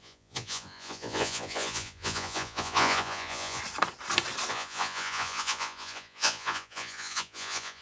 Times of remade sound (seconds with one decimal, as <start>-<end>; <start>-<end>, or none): 0.0-3.6; 4.5-7.8